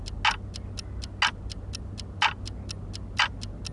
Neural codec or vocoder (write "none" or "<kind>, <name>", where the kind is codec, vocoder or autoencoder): none